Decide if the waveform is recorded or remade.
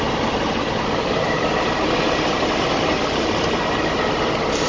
remade